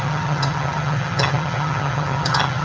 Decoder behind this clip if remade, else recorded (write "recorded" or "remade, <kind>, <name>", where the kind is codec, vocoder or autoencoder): remade, vocoder, HiFi-GAN